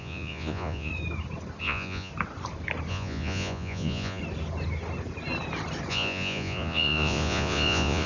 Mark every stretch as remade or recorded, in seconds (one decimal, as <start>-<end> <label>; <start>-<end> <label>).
0.0-0.9 remade; 0.9-1.6 recorded; 1.6-2.1 remade; 2.1-2.9 recorded; 2.9-4.2 remade; 4.2-5.9 recorded; 5.9-8.1 remade